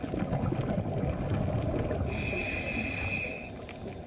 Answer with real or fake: real